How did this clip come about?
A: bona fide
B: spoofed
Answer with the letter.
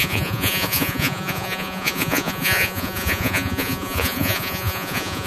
B